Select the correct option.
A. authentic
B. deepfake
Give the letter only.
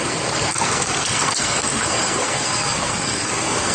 B